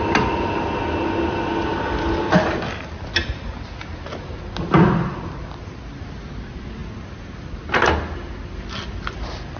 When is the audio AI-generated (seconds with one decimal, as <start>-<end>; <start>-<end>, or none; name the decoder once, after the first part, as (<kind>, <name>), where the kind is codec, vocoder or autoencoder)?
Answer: none

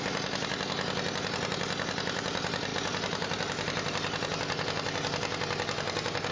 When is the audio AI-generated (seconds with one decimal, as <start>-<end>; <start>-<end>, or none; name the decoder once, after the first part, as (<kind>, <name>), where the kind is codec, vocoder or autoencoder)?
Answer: none

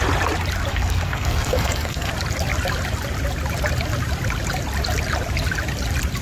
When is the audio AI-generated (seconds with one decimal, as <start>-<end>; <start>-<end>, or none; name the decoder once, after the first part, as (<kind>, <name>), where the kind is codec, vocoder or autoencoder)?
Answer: 0.7-2.1 (codec, SNAC)

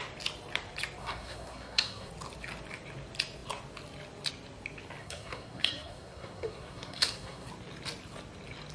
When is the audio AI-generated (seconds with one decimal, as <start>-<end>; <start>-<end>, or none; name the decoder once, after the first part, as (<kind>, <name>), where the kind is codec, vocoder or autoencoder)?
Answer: 1.0-2.1 (codec, SNAC); 5.0-7.5

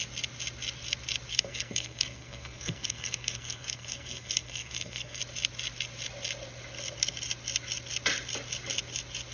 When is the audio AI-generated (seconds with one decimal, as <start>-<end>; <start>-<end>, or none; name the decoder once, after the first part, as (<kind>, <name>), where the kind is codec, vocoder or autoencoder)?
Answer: 1.3-5.2 (codec, SNAC)

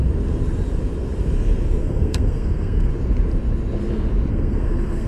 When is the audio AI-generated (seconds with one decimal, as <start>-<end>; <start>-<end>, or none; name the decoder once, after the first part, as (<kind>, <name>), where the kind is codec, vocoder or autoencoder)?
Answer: 1.8-2.9 (codec, SNAC); 4.3-5.1

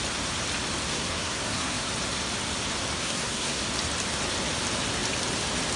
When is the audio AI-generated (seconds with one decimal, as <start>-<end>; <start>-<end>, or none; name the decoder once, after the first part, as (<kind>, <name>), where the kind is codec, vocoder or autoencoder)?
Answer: 0.9-1.9 (codec, SNAC); 3.0-3.6